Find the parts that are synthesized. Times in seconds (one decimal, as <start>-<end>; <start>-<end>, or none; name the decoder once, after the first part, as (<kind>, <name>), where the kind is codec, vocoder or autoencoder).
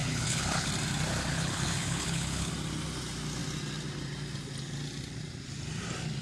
0.0-0.7 (codec, HILCodec); 1.3-2.5